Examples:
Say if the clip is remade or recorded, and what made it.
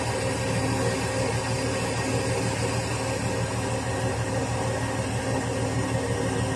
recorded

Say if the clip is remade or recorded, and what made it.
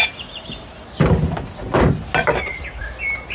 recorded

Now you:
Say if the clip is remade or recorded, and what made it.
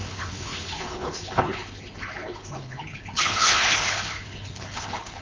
remade, codec, HILCodec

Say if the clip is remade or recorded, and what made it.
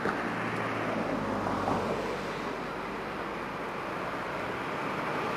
recorded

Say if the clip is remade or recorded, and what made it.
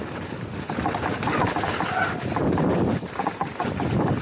recorded